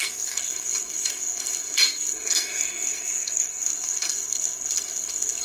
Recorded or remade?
remade